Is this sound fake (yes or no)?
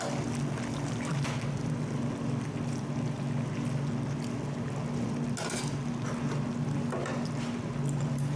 no